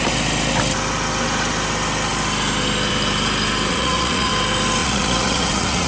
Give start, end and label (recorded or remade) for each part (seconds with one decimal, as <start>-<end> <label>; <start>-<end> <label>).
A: 0.0-3.7 recorded; 3.7-4.3 remade; 4.3-4.8 recorded; 4.8-5.9 remade